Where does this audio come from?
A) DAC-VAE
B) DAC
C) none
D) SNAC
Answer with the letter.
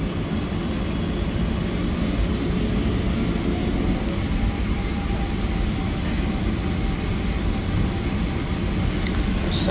C